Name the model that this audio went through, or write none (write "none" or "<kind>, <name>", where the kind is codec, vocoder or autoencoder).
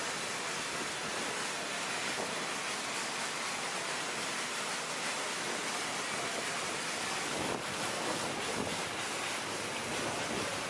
none